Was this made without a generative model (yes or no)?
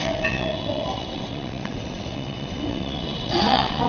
no